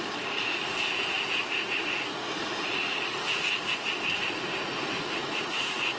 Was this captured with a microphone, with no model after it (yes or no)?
no